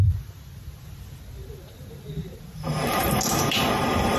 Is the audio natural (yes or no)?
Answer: no